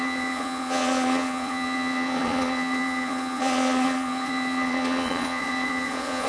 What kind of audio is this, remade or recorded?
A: remade